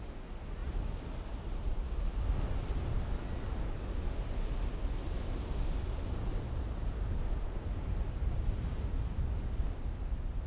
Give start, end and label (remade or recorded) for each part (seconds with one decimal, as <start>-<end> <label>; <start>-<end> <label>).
0.0-10.5 recorded